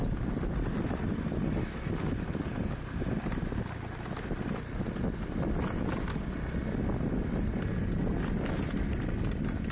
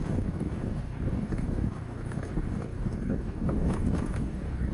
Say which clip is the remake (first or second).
second